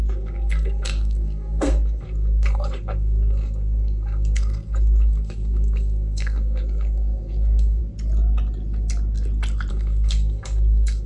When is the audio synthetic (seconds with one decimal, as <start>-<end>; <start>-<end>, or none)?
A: 0.0-7.8; 9.7-11.1